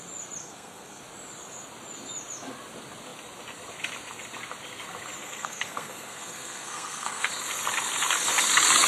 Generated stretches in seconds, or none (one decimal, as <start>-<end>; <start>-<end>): 0.4-1.0; 5.2-7.3